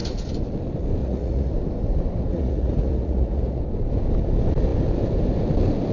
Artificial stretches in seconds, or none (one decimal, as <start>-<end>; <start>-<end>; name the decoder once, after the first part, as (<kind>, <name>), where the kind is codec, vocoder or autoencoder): 1.0-1.5 (vocoder, Vocos); 2.3-3.6

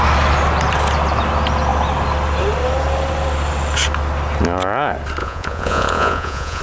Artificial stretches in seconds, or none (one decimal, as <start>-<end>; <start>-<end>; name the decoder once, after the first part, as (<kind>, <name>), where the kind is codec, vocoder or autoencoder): 5.2-6.6 (vocoder, Vocos)

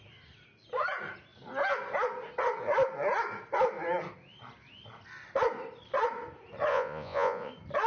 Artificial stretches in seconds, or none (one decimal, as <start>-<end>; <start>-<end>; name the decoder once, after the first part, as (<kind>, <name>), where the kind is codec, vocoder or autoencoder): 6.7-7.5 (vocoder, Vocos)

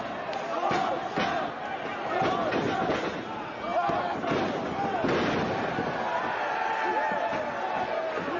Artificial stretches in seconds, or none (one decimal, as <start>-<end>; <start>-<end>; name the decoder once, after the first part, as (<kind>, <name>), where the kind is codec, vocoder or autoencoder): none

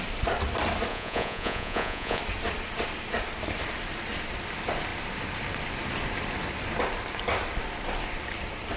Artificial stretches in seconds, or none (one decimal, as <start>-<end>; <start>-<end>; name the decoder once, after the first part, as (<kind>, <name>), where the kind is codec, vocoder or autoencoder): 0.9-2.2 (vocoder, Vocos)

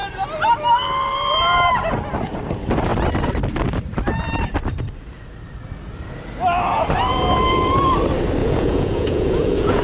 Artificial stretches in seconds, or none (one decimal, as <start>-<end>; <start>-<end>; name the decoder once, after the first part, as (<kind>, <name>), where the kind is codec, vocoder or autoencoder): 8.4-9.8 (vocoder, Vocos)

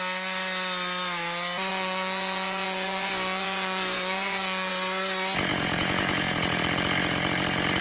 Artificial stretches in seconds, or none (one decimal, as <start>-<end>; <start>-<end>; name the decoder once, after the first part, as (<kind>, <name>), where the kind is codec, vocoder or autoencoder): 1.7-4.7 (vocoder, Vocos); 5.5-6.6

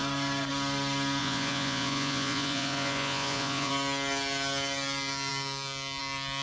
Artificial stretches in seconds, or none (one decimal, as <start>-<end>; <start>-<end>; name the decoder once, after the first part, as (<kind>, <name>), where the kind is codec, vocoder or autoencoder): 1.2-3.7 (vocoder, Vocos)